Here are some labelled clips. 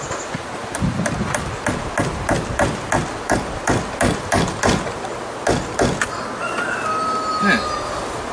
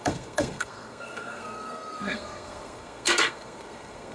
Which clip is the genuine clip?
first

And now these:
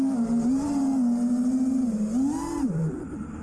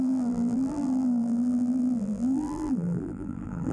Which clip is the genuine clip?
first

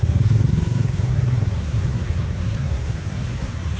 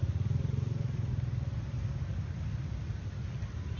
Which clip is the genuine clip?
second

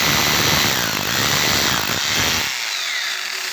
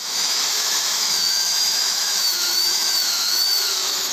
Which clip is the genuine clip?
first